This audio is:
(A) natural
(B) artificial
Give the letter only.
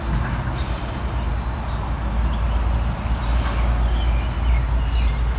A